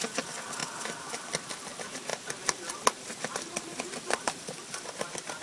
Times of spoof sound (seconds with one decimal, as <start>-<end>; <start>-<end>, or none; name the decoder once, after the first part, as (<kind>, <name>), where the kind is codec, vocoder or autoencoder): none